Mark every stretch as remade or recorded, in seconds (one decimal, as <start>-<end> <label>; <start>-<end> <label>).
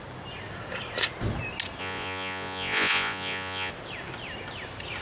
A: 0.0-1.8 recorded; 1.8-3.7 remade; 3.7-5.0 recorded